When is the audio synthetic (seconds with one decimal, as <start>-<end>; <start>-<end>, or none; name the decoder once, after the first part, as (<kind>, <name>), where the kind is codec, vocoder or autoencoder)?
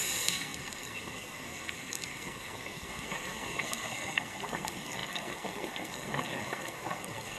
0.0-7.4 (codec, SNAC)